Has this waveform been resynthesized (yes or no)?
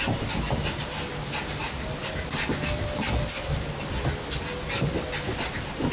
no